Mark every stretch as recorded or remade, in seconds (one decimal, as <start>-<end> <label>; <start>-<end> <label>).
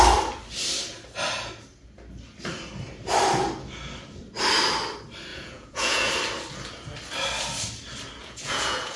0.0-5.3 recorded; 5.3-6.1 remade; 6.1-8.2 recorded; 8.2-9.0 remade